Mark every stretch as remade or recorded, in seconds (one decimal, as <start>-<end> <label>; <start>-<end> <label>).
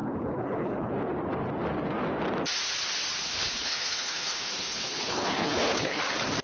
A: 0.0-0.9 remade; 0.9-3.2 recorded; 3.2-6.0 remade; 6.0-6.4 recorded